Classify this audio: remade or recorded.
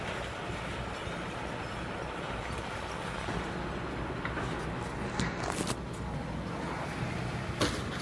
recorded